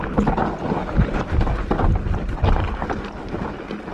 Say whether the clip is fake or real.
real